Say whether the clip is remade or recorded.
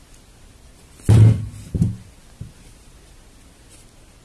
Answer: recorded